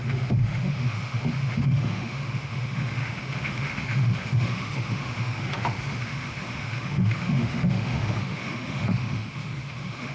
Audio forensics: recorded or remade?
remade